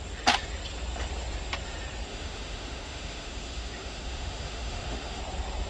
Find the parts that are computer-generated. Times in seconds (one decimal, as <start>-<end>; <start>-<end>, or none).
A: 2.1-5.2